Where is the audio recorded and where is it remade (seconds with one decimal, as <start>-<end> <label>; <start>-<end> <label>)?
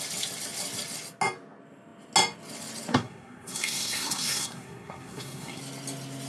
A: 0.0-2.9 recorded; 2.9-5.6 remade; 5.6-6.3 recorded